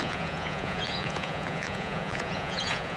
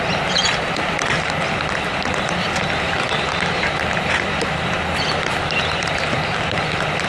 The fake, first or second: first